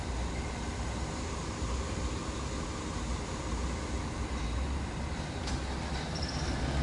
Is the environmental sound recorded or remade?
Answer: recorded